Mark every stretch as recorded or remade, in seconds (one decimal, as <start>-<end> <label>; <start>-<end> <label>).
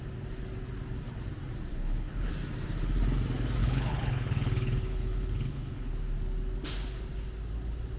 0.0-1.7 recorded; 1.7-2.3 remade; 2.3-3.6 recorded; 3.6-5.9 remade; 5.9-8.0 recorded